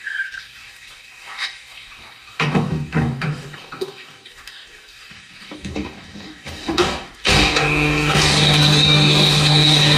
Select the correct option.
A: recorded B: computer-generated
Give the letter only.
B